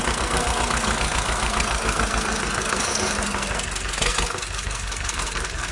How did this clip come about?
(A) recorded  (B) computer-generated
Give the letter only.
B